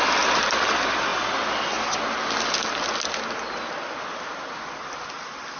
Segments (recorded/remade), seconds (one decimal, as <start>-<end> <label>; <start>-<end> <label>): 0.0-5.6 recorded